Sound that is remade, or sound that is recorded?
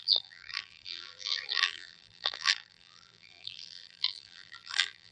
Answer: remade